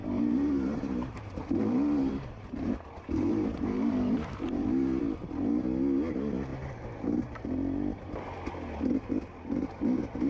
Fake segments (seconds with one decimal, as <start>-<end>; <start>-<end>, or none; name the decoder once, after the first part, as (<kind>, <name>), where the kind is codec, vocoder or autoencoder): 0.0-5.0 (vocoder, BigVGAN v2)